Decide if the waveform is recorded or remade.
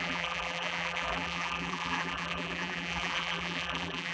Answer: remade